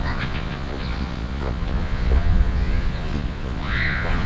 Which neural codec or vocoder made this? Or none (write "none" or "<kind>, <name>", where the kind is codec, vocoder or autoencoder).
vocoder, Vocos